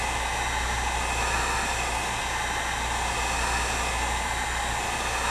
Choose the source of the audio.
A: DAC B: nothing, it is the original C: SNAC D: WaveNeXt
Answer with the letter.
B